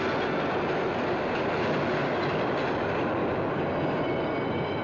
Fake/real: real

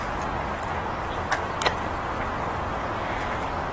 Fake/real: real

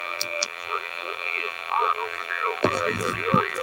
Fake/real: fake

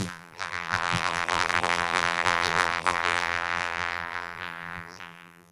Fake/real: fake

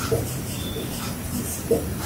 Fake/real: fake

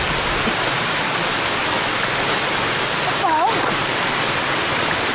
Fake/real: real